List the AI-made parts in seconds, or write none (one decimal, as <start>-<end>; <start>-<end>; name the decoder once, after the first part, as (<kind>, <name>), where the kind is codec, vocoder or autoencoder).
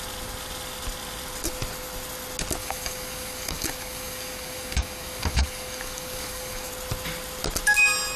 2.6-6.7 (codec, DAC)